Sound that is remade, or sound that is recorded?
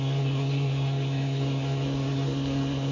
remade